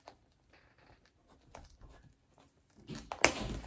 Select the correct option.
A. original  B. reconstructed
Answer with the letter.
A